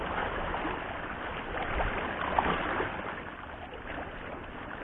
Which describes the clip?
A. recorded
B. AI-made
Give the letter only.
A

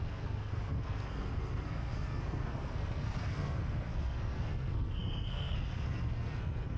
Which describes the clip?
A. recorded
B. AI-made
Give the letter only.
B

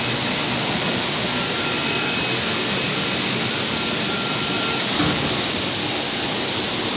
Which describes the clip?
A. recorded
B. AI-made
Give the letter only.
A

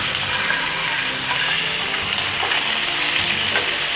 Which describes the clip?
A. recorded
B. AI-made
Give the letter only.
A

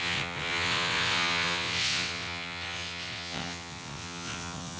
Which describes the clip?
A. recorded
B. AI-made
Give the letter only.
B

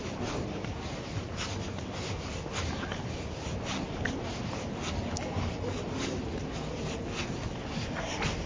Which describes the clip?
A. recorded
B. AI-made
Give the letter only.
A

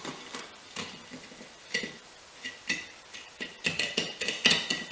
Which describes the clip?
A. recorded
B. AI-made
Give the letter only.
A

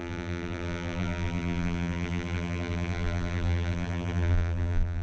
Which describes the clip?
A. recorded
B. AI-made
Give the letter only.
B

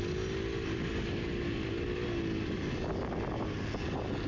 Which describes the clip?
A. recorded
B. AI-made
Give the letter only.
A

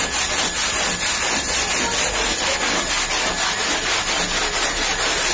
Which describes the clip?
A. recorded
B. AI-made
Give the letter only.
A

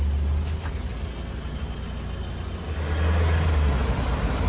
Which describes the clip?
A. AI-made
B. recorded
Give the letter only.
B